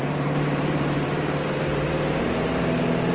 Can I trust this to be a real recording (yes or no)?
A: no